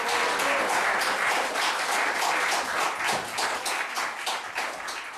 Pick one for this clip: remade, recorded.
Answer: recorded